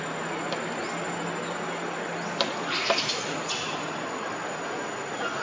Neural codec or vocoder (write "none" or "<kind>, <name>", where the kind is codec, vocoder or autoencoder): none